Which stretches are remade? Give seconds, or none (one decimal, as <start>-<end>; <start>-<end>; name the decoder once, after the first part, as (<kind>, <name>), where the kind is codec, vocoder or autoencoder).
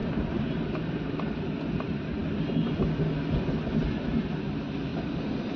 0.0-2.2 (vocoder, BigVGAN v2); 3.8-5.6